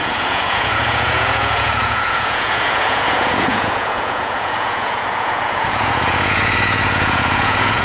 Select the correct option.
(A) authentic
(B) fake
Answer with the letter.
B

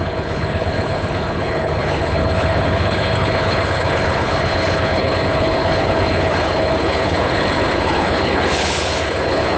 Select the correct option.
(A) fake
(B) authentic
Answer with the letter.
A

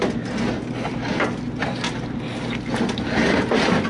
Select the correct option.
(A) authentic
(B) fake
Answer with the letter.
A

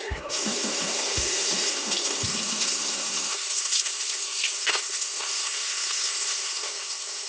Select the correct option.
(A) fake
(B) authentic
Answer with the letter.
A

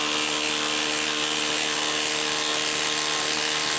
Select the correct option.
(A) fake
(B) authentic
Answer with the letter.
B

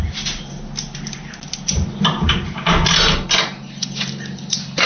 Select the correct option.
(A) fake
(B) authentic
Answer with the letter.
B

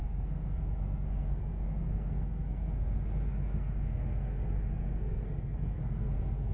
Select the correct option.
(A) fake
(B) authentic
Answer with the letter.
A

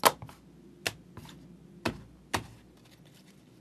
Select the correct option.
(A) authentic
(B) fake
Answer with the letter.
A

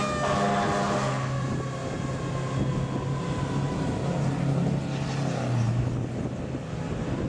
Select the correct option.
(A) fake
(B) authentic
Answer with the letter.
B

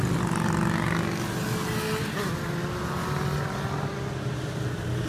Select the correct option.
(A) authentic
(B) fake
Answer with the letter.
A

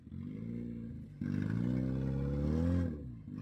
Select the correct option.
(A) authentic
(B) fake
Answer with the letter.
A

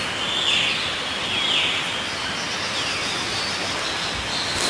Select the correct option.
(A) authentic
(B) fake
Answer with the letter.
A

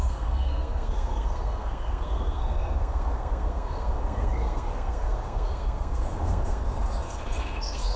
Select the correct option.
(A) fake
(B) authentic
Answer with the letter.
A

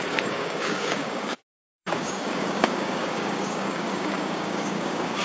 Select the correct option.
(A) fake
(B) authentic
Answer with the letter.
A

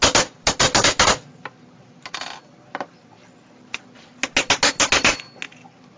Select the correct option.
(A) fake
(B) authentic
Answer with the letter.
B